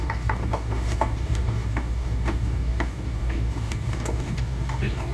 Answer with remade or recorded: remade